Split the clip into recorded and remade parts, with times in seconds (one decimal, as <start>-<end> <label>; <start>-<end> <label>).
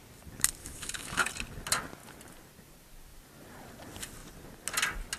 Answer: 0.0-0.6 recorded; 0.6-1.3 remade; 1.3-5.2 recorded